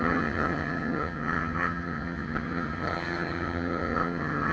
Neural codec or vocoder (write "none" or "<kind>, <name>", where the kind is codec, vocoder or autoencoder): vocoder, HiFi-GAN